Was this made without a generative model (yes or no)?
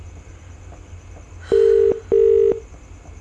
yes